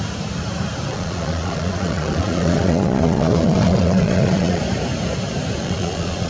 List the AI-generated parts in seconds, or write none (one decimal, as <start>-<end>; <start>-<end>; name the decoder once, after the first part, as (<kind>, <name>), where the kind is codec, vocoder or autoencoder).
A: 0.9-4.6 (vocoder, Vocos); 5.6-6.3